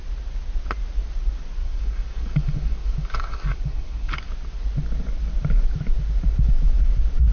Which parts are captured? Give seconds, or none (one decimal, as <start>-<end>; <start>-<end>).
0.0-1.6; 4.3-7.3